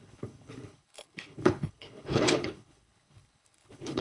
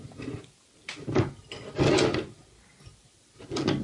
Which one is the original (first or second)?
second